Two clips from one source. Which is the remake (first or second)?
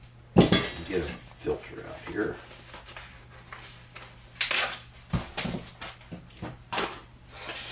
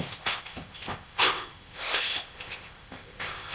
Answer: second